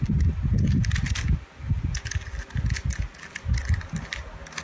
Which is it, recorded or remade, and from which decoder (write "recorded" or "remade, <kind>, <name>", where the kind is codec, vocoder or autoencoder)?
recorded